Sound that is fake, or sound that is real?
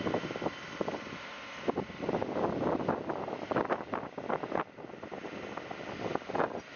fake